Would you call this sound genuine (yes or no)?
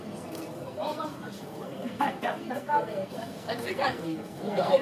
no